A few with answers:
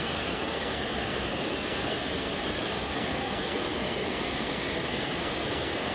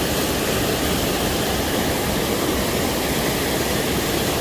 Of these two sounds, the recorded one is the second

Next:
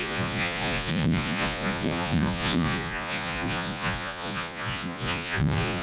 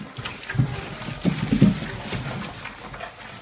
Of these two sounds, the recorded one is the second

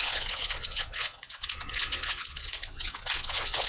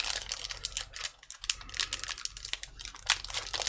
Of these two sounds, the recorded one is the second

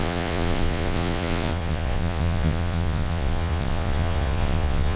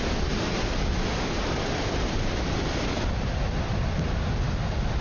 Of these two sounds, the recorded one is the second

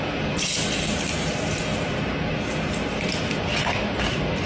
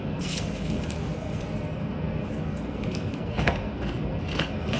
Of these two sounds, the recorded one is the first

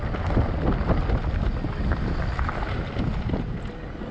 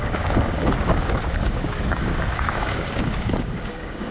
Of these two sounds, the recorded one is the first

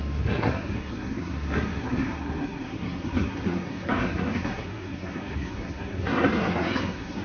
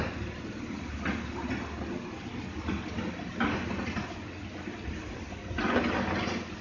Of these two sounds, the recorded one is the second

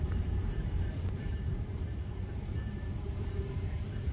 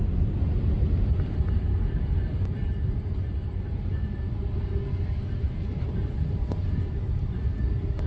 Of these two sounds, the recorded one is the second